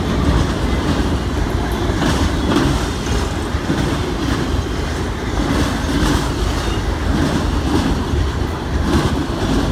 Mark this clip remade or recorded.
recorded